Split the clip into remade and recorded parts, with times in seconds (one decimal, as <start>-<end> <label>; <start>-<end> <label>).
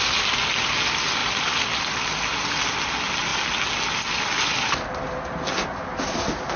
0.0-6.6 recorded